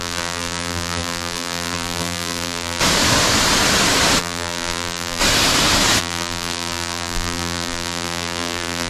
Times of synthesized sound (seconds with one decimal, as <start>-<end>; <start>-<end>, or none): 0.0-2.8; 4.2-5.2; 6.0-8.9